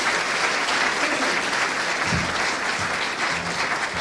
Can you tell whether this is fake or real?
real